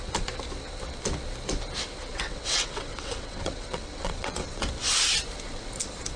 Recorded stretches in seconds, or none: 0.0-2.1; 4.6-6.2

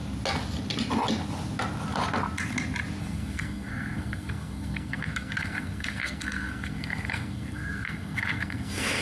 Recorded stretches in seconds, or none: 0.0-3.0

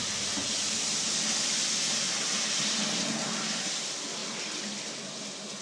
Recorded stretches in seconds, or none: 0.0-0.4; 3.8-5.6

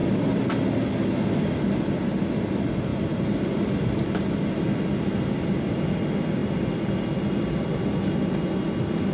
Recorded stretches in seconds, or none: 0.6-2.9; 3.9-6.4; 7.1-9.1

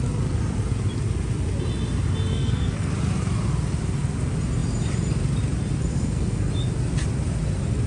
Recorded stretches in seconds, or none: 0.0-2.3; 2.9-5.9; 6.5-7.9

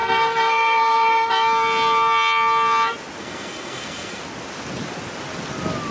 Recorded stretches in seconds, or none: 1.3-3.2; 4.2-5.9

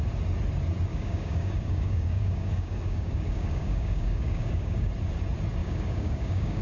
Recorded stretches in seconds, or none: 0.0-0.9; 4.9-5.6